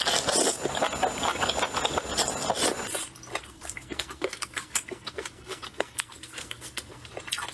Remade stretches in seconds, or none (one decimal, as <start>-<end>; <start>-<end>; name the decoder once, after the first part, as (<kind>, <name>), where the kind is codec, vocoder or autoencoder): 3.4-7.1 (codec, SNAC)